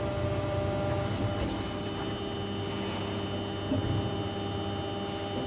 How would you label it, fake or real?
real